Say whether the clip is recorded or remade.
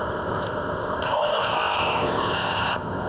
remade